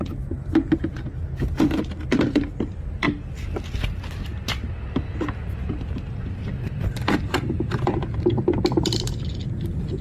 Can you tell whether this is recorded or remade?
recorded